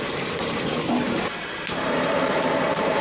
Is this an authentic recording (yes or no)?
no